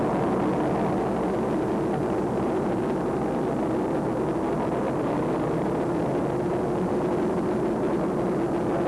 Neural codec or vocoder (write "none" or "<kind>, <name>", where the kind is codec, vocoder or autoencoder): none